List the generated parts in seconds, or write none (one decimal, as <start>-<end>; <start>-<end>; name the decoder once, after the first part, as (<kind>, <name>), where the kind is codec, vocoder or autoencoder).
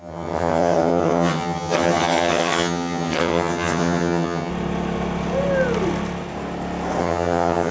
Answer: 0.0-4.5 (vocoder, HiFi-GAN); 7.0-7.7